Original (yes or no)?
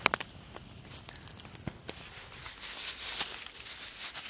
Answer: yes